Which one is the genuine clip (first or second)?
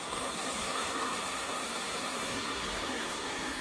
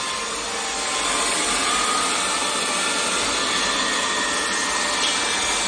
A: second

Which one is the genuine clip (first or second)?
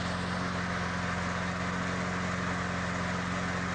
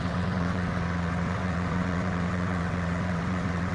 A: first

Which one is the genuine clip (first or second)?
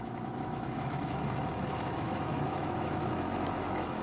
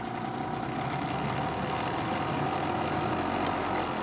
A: second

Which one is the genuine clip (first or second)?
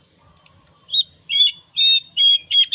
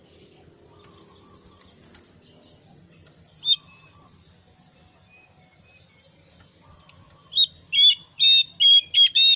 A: second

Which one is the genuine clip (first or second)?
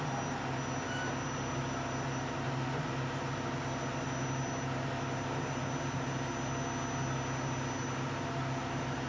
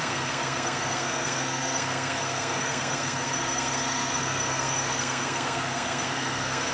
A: first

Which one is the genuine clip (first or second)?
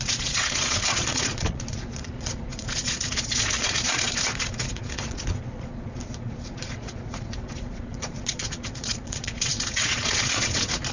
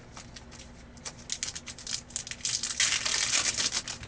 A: second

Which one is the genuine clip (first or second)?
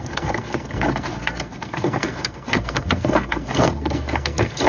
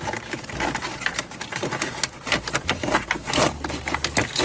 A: second